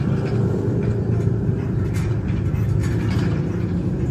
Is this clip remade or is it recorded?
remade